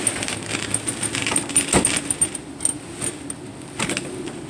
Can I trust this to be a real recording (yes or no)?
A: yes